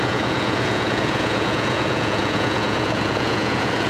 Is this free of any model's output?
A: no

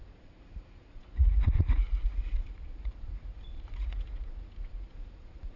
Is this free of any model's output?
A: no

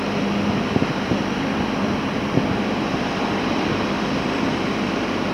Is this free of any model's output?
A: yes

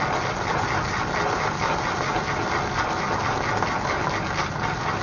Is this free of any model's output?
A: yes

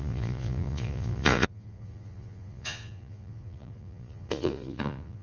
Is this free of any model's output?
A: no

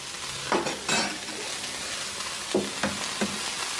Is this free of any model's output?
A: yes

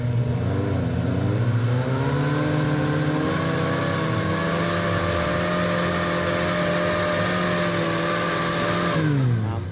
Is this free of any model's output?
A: yes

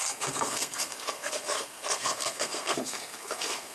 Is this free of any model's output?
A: no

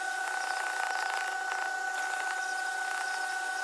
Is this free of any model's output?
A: yes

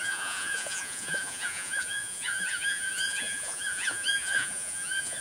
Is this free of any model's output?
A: no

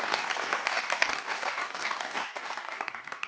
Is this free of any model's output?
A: no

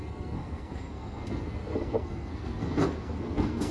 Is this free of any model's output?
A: no